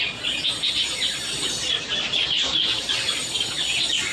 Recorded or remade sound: recorded